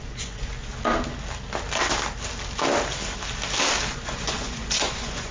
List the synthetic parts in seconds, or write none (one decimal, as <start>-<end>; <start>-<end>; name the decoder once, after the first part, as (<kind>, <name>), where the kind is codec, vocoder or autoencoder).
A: 0.0-0.7 (vocoder, Vocos); 3.9-5.3

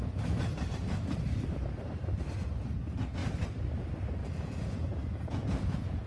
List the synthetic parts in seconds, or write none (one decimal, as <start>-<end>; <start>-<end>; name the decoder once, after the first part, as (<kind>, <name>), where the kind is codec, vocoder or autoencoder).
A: 4.2-6.1 (vocoder, Vocos)

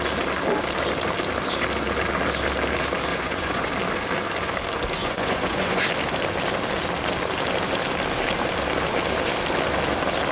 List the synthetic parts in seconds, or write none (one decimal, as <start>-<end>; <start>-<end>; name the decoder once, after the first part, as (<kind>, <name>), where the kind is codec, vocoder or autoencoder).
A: 3.1-3.7 (vocoder, Vocos); 5.0-5.8

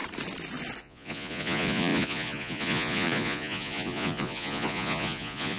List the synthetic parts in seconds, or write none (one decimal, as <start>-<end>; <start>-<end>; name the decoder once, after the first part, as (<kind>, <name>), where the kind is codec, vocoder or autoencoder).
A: 0.8-5.6 (vocoder, Vocos)

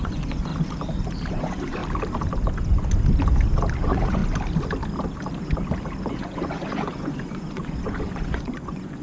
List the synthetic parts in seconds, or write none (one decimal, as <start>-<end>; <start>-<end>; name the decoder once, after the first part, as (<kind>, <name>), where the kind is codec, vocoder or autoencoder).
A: 0.0-0.5 (vocoder, Vocos); 1.3-1.8; 3.8-4.2; 6.1-9.0

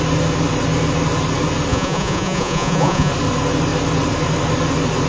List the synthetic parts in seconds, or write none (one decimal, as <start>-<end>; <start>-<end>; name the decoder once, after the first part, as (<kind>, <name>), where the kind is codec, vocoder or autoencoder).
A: 1.7-3.1 (vocoder, Vocos)

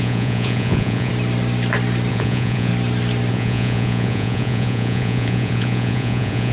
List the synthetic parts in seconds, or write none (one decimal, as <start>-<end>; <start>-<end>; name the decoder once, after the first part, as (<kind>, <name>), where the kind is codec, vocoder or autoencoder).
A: 0.0-1.1 (vocoder, Vocos); 2.1-2.7; 3.3-6.5

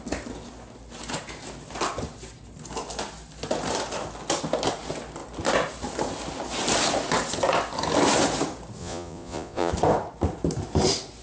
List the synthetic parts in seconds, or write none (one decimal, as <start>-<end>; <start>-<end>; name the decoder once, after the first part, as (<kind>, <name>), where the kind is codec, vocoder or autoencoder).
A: 8.8-9.7 (vocoder, Vocos)